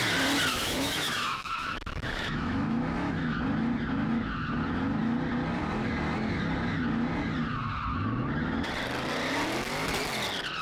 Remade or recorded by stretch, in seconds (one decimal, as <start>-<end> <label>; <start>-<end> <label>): 0.0-0.5 recorded; 0.5-3.4 remade; 3.4-10.6 recorded